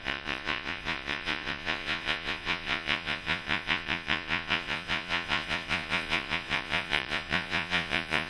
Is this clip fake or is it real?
fake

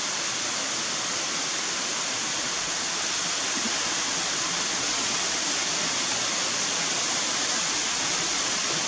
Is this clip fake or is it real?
real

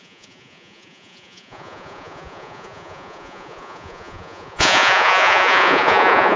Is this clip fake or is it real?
fake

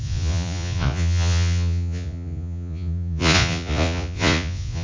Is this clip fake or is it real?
fake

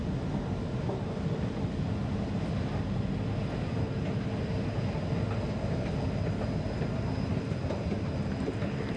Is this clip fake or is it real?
real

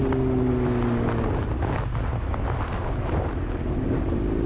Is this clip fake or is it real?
real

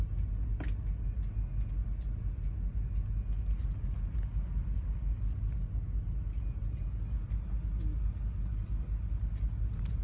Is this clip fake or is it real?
real